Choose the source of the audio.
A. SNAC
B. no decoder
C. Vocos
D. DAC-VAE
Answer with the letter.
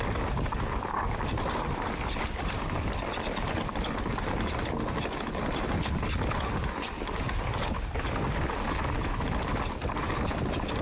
B